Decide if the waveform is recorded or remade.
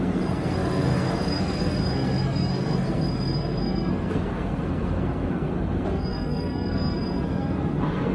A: remade